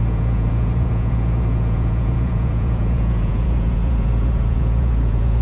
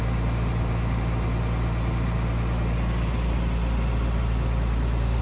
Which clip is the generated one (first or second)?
first